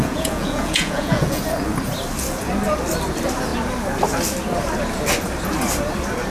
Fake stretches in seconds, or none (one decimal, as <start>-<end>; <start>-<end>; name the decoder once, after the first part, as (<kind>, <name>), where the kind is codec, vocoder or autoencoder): 0.0-1.4 (vocoder, Vocos)